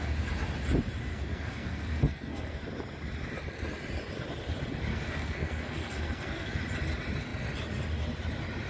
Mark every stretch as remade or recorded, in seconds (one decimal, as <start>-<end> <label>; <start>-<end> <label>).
0.0-1.1 recorded; 1.1-2.6 remade; 2.6-4.9 recorded; 4.9-6.6 remade; 6.6-8.7 recorded